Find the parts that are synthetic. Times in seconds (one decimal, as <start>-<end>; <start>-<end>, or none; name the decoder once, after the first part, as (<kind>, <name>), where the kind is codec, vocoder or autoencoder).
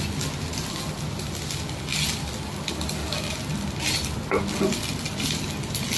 none